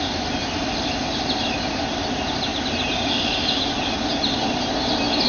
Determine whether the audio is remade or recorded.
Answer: recorded